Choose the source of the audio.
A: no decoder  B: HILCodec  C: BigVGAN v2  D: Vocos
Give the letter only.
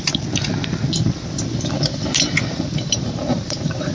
A